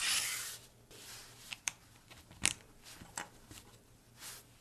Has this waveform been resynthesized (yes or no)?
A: no